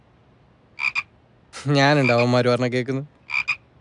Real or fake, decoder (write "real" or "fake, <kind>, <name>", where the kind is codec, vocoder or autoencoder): real